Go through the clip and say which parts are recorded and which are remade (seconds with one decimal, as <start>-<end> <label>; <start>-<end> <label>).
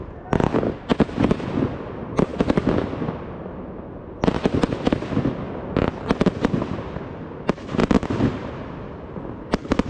0.0-9.9 recorded